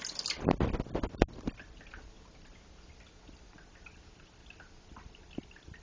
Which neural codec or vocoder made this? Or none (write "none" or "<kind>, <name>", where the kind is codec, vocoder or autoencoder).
none